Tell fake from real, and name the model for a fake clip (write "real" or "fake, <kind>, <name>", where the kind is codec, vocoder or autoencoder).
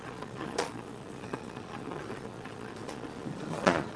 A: fake, vocoder, Vocos